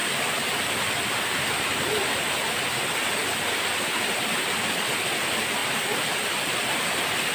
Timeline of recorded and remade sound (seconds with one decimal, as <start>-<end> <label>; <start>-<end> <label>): 0.0-0.7 remade; 0.7-3.2 recorded; 3.2-4.9 remade; 4.9-5.6 recorded; 5.6-7.3 remade